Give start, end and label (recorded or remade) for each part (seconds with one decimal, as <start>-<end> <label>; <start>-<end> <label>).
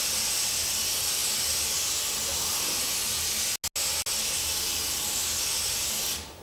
0.0-6.4 recorded